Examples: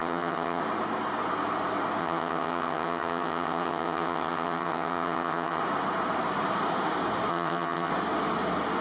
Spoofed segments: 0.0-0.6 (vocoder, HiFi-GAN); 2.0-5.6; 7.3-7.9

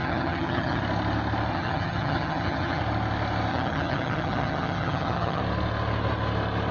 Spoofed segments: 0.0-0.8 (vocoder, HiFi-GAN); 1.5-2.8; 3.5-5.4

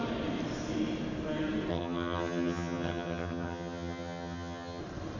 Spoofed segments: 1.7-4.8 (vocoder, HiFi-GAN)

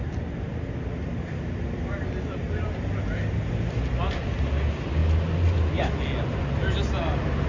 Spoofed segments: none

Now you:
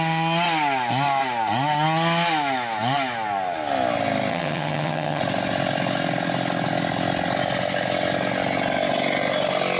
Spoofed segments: 4.3-5.2 (vocoder, HiFi-GAN)

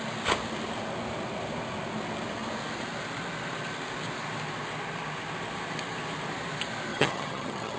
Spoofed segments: 6.9-7.8 (vocoder, HiFi-GAN)

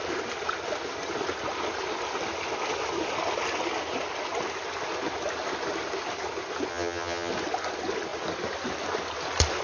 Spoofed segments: 6.7-7.3 (vocoder, HiFi-GAN)